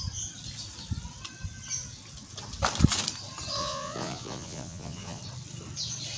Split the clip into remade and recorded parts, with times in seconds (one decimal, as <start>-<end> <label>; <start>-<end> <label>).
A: 0.0-3.6 recorded; 3.6-5.2 remade; 5.2-6.2 recorded